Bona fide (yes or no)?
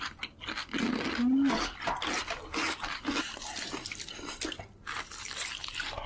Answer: yes